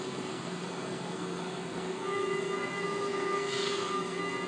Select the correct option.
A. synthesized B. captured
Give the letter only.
A